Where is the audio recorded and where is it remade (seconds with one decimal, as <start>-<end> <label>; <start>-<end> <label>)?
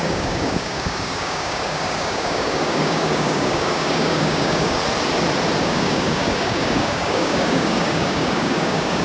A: 0.0-4.8 remade; 4.8-5.6 recorded; 5.6-9.0 remade